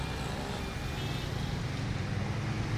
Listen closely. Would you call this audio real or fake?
real